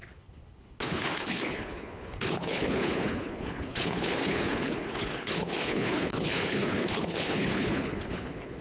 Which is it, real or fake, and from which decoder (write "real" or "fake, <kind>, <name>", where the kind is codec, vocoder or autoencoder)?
fake, codec, HILCodec